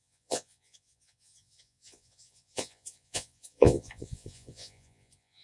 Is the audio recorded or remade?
remade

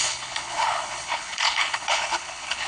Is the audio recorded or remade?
remade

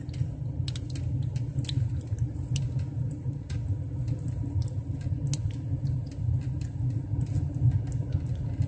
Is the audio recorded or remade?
recorded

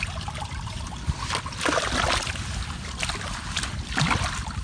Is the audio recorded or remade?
recorded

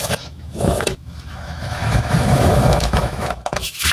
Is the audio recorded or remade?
remade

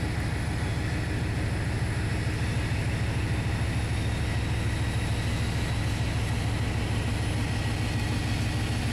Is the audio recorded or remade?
recorded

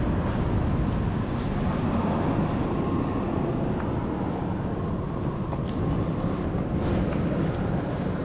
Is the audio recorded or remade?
recorded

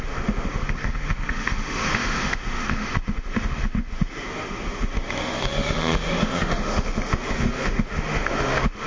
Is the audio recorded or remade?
remade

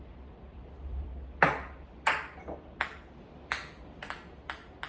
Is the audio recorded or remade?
recorded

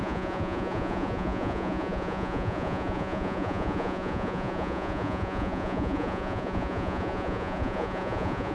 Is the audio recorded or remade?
remade